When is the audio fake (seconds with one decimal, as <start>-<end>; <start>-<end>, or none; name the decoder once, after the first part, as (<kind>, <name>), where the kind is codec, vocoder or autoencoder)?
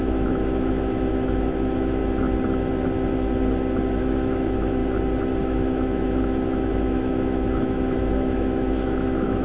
0.0-2.0 (autoencoder, DAC-VAE); 4.0-4.8; 5.4-9.4